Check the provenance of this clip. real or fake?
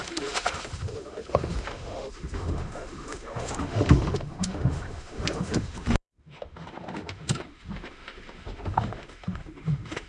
fake